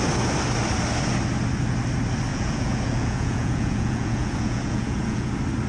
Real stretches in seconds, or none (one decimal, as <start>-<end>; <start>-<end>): 0.0-2.3; 5.3-5.7